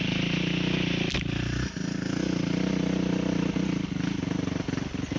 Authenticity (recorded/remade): recorded